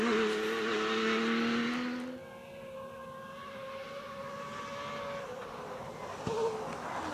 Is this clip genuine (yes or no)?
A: yes